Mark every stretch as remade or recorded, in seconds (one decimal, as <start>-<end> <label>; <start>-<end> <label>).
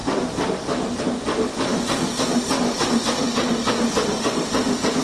0.0-1.0 recorded; 1.0-1.5 remade; 1.5-2.9 recorded; 2.9-5.0 remade